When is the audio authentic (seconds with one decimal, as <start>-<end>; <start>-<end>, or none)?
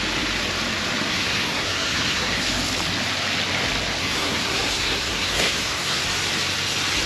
0.0-1.1; 2.5-4.0; 6.0-7.1